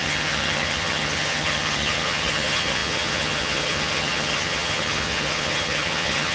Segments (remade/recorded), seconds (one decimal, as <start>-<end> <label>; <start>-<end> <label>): 0.0-6.3 remade